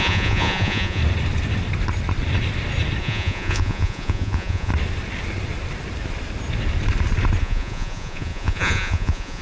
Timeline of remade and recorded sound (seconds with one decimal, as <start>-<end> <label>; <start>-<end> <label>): 0.0-1.0 remade; 1.0-3.0 recorded; 3.0-4.7 remade; 4.7-7.4 recorded; 7.4-9.4 remade